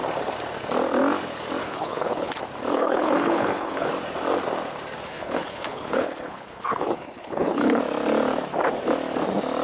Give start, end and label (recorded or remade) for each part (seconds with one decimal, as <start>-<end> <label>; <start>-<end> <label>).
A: 0.0-1.6 recorded; 1.6-2.3 remade; 2.3-2.7 recorded; 2.7-3.9 remade; 3.9-5.0 recorded; 5.0-7.8 remade; 7.8-9.6 recorded